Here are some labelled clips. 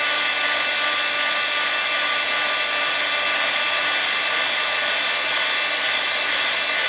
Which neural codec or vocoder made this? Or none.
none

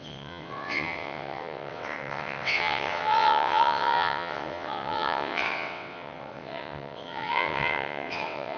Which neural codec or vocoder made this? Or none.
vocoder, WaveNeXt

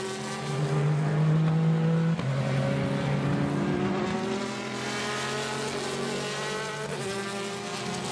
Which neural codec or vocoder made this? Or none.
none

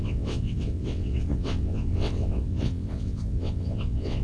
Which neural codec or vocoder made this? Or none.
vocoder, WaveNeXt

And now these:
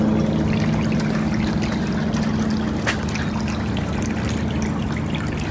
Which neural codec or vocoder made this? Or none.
none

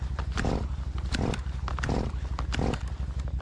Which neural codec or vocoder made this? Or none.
none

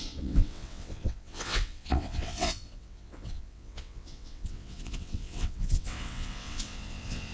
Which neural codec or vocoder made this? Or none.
vocoder, WaveNeXt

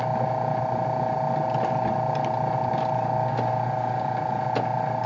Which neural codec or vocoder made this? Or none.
none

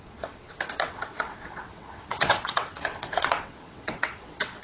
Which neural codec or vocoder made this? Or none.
vocoder, WaveNeXt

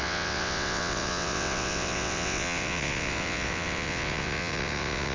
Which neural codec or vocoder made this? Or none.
vocoder, WaveNeXt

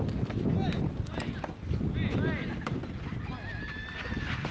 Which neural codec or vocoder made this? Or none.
none